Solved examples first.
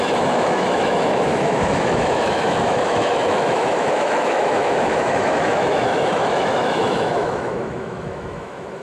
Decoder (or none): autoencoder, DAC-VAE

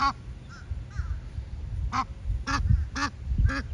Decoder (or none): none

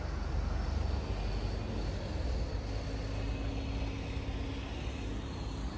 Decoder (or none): none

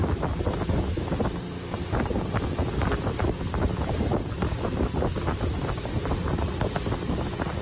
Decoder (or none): none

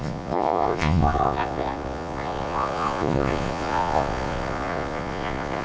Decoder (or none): vocoder, Vocos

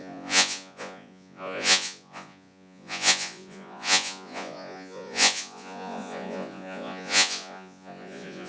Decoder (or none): vocoder, Vocos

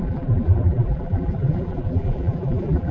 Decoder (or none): vocoder, BigVGAN v2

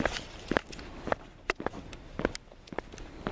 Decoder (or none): none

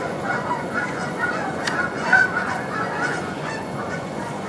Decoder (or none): vocoder, Vocos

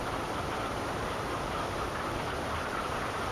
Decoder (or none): none